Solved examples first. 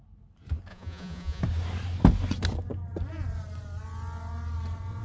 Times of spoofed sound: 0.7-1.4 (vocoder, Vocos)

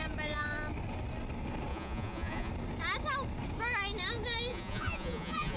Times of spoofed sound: 1.7-2.5 (vocoder, Vocos); 4.5-5.6

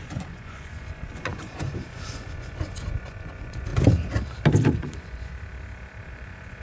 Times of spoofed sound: 0.0-3.7 (vocoder, Vocos); 4.8-5.3; 6.1-6.6

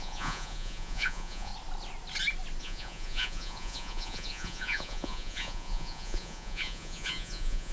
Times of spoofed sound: 0.0-1.5 (vocoder, Vocos); 2.6-7.7

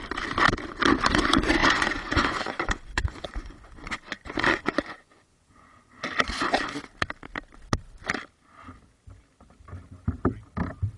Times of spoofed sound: 1.6-6.0 (vocoder, Vocos)

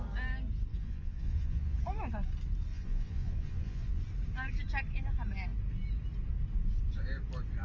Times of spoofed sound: 0.7-1.8 (vocoder, Vocos); 2.7-4.0

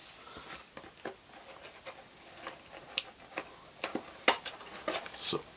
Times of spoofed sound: none

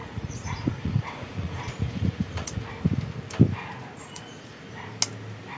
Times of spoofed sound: 0.0-2.7 (vocoder, Vocos); 4.0-4.6